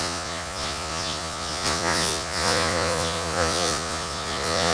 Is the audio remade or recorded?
remade